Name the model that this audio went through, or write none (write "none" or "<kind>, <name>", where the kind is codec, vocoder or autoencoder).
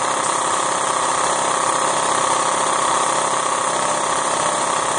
none